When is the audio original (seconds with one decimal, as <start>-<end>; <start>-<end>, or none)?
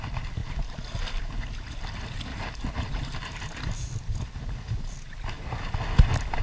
0.0-2.3; 4.7-6.4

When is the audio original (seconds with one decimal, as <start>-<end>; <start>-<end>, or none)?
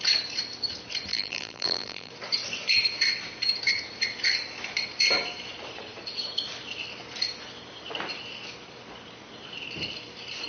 0.0-1.1; 2.1-10.5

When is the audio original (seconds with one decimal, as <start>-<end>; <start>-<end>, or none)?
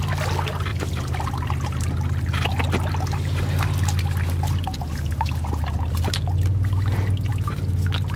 0.0-0.7; 1.3-8.2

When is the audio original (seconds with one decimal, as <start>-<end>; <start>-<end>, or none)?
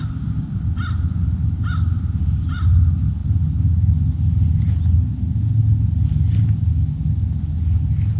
0.0-8.2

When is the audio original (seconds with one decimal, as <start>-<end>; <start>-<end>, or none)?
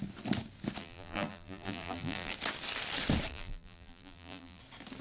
0.0-0.8; 2.3-3.3; 4.6-5.0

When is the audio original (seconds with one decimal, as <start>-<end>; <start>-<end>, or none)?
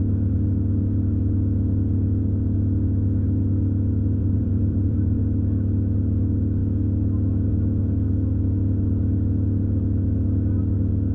0.0-4.2; 5.2-11.1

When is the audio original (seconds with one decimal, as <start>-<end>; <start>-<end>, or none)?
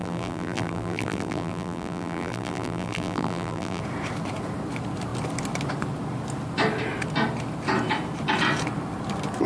3.8-9.5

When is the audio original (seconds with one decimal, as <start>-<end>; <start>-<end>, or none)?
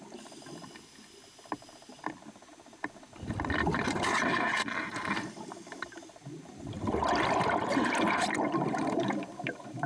6.2-6.8